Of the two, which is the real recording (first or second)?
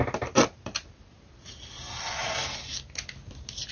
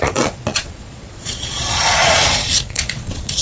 first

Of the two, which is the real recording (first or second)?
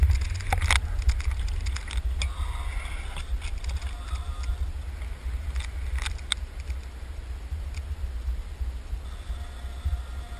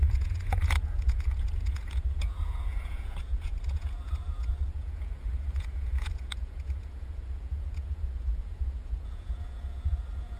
first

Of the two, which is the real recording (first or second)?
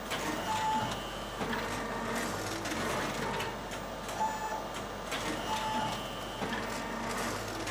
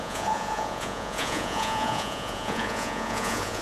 first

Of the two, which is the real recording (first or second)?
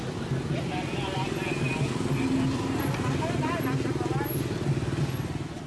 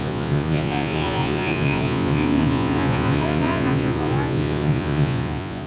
first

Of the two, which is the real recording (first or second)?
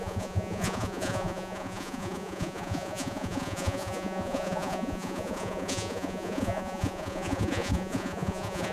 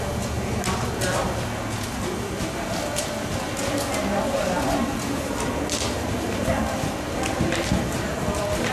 second